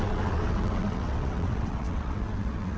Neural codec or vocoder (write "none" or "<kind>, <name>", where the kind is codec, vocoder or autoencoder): vocoder, WaveNeXt